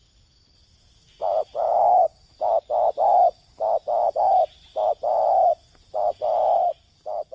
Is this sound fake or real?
real